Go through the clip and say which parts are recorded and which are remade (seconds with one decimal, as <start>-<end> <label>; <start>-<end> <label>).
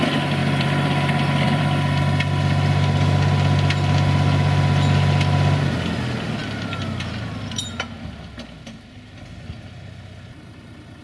0.0-0.4 recorded; 0.4-2.0 remade; 2.0-11.0 recorded